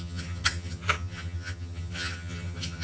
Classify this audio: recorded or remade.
remade